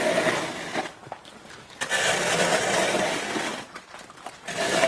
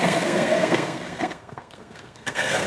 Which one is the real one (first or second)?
first